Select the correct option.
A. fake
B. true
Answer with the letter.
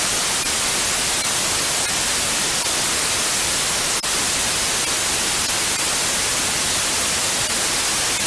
B